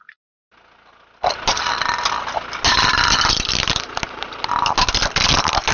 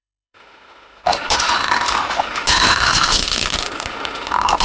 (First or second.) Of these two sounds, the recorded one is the first